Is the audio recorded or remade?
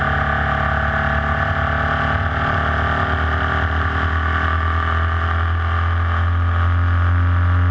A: recorded